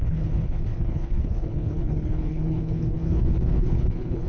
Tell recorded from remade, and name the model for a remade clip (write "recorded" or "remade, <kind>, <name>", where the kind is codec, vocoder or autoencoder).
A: remade, codec, HILCodec